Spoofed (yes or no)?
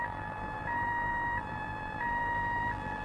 yes